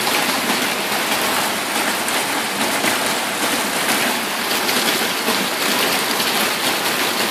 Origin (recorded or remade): recorded